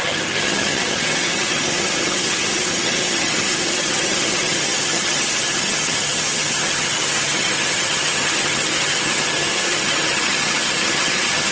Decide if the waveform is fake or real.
fake